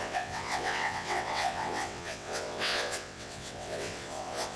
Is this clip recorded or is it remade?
remade